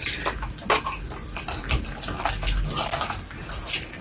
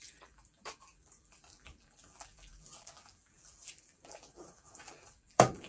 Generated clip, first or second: second